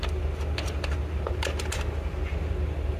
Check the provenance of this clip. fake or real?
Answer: real